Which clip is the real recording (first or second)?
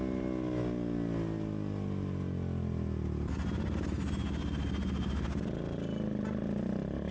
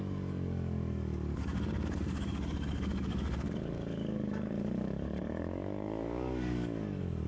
first